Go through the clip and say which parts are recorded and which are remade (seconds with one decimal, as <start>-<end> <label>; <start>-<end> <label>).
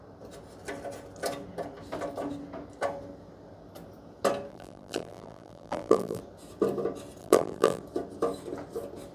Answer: 0.0-4.5 recorded; 4.5-6.2 remade; 6.2-7.2 recorded; 7.2-7.8 remade; 7.8-9.1 recorded